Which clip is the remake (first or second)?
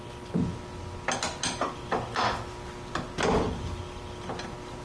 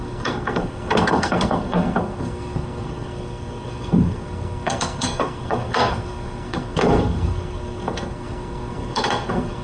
second